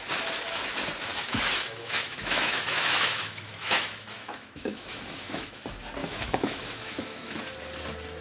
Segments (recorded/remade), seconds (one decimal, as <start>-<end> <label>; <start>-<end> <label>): 0.0-1.1 recorded; 1.1-5.6 remade; 5.6-6.0 recorded; 6.0-7.4 remade; 7.4-8.2 recorded